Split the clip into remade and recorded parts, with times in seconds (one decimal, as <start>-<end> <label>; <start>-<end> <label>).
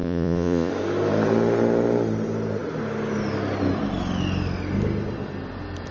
0.0-0.7 remade; 0.7-5.9 recorded